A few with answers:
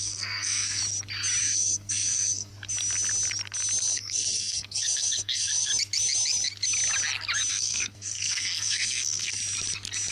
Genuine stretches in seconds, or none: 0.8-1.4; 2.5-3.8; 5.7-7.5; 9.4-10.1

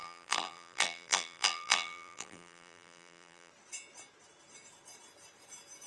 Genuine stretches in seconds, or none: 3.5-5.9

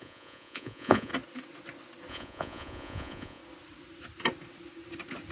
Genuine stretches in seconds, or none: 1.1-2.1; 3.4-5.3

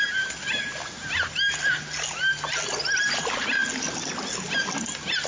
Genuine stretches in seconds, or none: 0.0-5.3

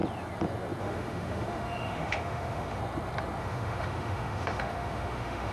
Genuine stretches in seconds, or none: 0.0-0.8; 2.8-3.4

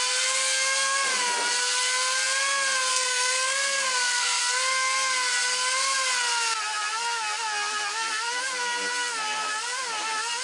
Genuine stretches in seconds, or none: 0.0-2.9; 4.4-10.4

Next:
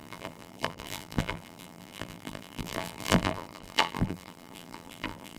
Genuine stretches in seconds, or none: none

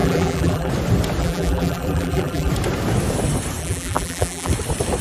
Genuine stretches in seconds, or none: 0.7-1.2; 2.5-3.6; 4.5-5.0